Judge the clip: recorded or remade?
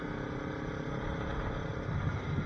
recorded